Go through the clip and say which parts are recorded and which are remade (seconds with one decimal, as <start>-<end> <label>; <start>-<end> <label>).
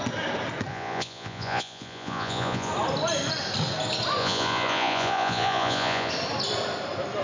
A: 0.0-0.7 recorded; 0.7-2.7 remade; 2.7-4.2 recorded; 4.2-6.1 remade; 6.1-7.2 recorded